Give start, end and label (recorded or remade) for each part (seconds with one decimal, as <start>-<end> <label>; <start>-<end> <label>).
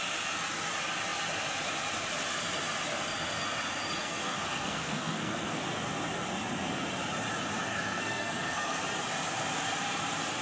0.0-4.0 recorded; 4.0-5.6 remade; 5.6-7.7 recorded; 7.7-8.8 remade; 8.8-10.4 recorded